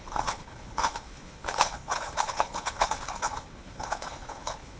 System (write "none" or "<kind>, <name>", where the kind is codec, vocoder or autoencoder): codec, HILCodec